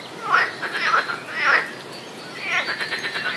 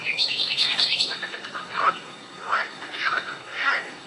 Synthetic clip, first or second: second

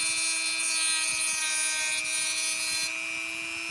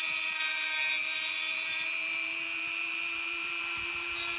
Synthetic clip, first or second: second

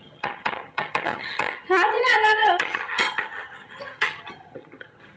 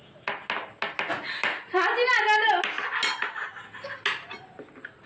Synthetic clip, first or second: first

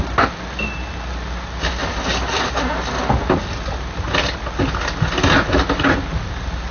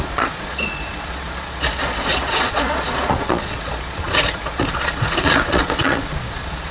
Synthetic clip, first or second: second